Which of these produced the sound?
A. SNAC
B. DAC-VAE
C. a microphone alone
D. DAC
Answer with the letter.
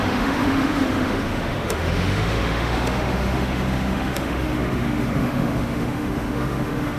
B